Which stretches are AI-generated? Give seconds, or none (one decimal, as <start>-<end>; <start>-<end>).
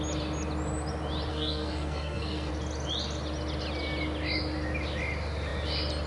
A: 1.3-2.5